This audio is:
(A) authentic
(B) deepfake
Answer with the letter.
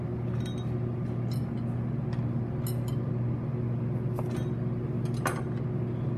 A